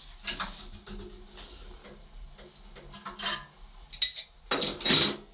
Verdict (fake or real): real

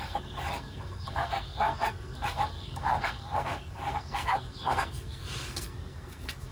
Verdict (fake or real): fake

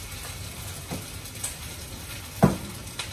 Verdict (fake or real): real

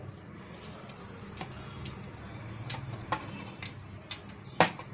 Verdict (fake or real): real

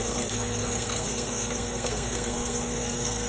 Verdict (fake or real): fake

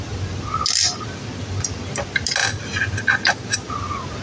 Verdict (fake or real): real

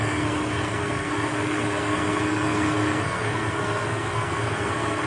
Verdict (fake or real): fake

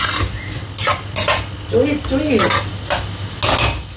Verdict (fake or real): real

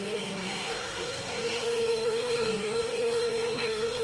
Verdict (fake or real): fake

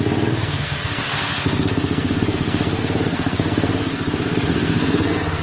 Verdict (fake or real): fake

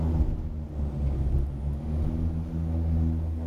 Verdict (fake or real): real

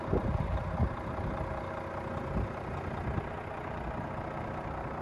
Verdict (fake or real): real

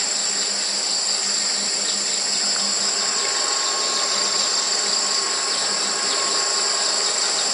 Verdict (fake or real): real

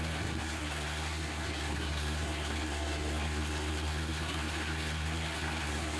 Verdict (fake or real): fake